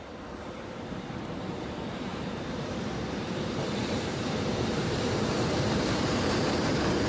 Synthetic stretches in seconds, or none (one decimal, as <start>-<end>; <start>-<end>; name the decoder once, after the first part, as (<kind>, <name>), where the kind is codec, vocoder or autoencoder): 0.0-7.1 (vocoder, BigVGAN v2)